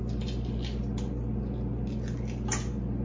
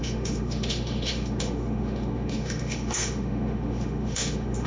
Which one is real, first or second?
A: first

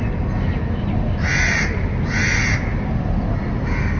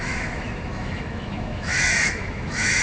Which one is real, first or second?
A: first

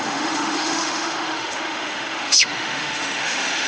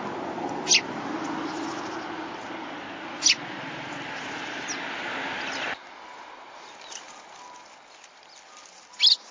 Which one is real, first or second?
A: second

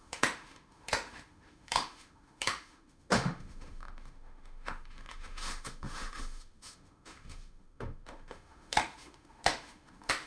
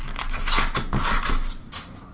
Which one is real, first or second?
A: second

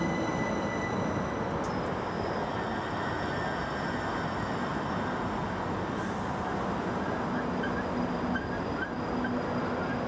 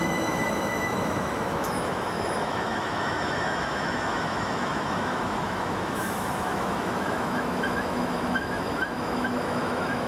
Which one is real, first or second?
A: first